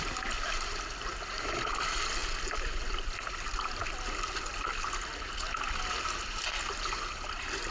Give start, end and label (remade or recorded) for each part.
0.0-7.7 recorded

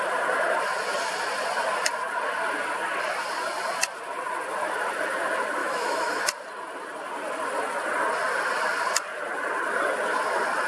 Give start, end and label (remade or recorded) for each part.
0.0-5.6 recorded; 5.6-6.2 remade; 6.2-10.7 recorded

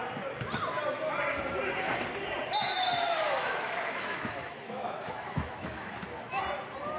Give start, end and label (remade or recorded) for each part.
0.0-2.7 recorded; 2.7-6.4 remade; 6.4-7.0 recorded

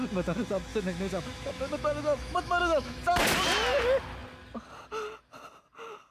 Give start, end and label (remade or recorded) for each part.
0.0-0.7 recorded; 0.7-3.0 remade; 3.0-6.1 recorded

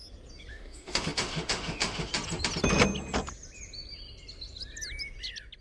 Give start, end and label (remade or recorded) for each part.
0.0-0.5 recorded; 0.5-2.1 remade; 2.1-5.6 recorded